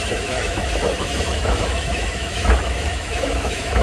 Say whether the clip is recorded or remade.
remade